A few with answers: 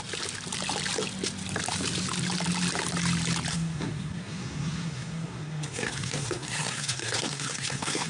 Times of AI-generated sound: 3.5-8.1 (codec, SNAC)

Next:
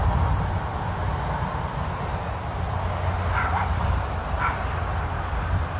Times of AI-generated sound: none

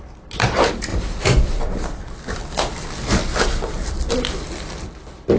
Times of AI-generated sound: 0.9-4.1 (vocoder, BigVGAN v2)

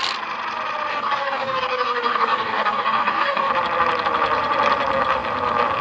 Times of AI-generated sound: 0.9-3.5 (codec, DAC)

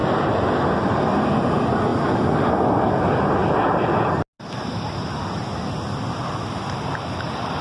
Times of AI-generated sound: none

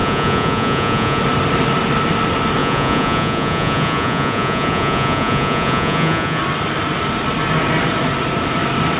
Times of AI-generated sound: 0.0-1.2 (vocoder, Vocos); 2.6-6.4